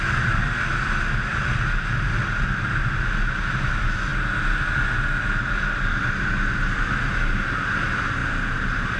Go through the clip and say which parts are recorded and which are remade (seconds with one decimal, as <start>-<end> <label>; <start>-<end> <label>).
0.0-9.0 recorded